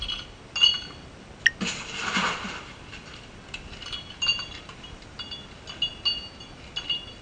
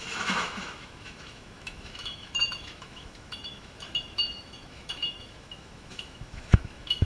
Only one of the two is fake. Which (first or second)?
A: second